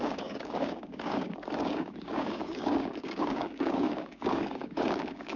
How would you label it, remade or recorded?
remade